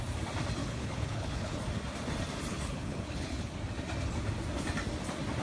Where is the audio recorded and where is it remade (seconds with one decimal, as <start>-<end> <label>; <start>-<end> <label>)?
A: 0.0-0.6 recorded; 0.6-1.6 remade; 1.6-2.5 recorded; 2.5-3.5 remade; 3.5-5.4 recorded